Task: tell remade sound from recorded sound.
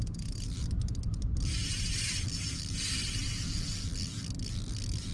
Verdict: recorded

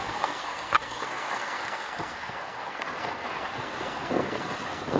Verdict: remade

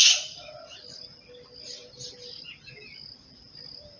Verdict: recorded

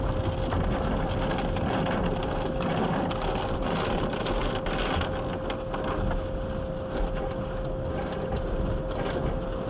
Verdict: recorded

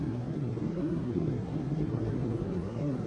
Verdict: remade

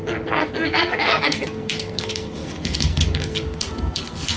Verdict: remade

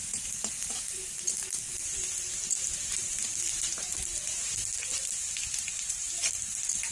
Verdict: recorded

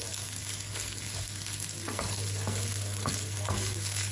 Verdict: remade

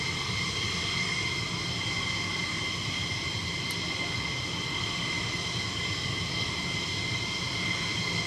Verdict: recorded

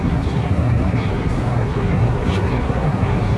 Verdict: remade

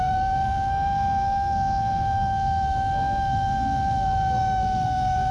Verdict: remade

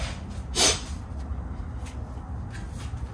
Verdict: recorded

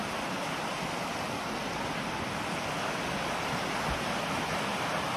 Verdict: recorded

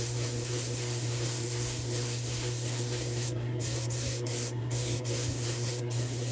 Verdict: remade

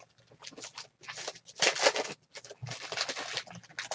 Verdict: recorded